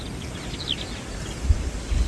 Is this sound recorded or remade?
recorded